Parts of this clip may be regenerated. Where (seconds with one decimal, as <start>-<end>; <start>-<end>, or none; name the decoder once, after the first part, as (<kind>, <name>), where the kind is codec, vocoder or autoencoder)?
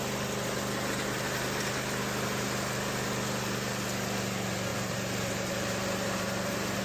4.7-6.8 (vocoder, BigVGAN v2)